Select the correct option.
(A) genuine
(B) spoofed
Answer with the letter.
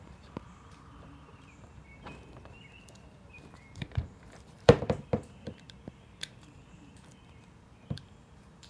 B